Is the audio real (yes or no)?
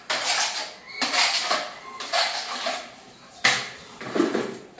yes